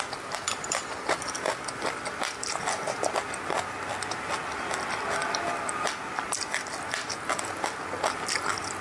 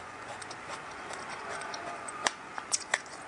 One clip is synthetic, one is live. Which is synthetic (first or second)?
second